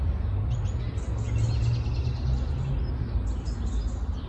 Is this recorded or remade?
recorded